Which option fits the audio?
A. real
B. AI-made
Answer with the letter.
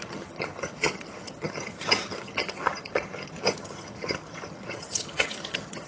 B